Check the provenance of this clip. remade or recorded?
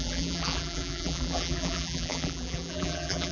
remade